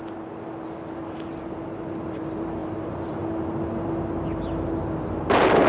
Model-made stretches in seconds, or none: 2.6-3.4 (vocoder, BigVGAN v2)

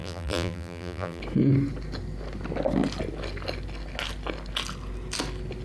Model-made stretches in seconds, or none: 0.0-1.2 (vocoder, BigVGAN v2)